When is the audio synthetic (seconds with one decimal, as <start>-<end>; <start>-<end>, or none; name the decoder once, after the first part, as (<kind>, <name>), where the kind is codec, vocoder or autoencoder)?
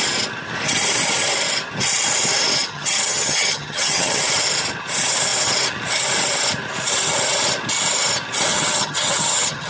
2.6-4.2 (vocoder, HiFi-GAN); 8.5-9.7